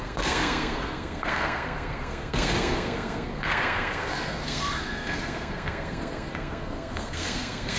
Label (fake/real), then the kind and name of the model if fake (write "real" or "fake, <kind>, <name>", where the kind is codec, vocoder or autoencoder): fake, codec, SNAC